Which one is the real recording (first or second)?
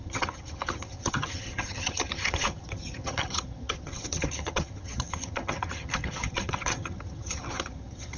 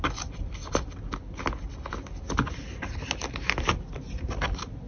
second